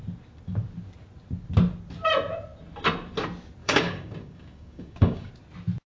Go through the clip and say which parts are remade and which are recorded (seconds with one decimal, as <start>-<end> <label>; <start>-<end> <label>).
0.0-3.6 recorded; 3.6-5.3 remade; 5.3-6.0 recorded